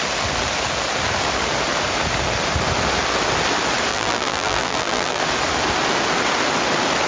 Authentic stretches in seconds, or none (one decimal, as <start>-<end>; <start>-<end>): 0.0-3.9; 5.2-7.1